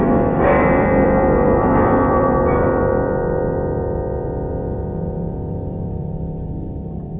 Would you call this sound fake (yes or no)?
yes